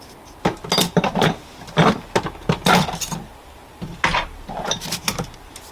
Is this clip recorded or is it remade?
recorded